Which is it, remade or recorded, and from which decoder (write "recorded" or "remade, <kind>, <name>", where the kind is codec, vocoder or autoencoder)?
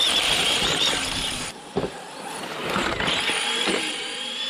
remade, vocoder, BigVGAN v2